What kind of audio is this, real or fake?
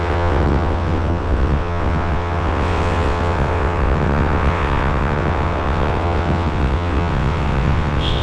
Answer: fake